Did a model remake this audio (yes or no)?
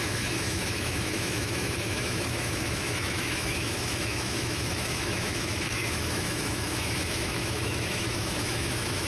yes